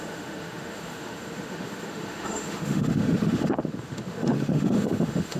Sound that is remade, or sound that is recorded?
remade